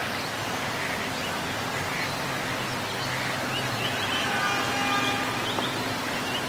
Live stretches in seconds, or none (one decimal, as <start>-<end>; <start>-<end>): 0.8-6.5